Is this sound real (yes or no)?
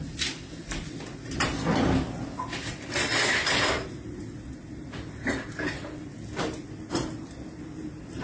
yes